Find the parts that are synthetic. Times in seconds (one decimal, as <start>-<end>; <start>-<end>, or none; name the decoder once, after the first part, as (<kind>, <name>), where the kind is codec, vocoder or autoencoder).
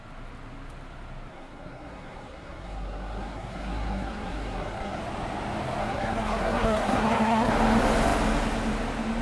1.3-5.0 (codec, SNAC); 5.8-7.5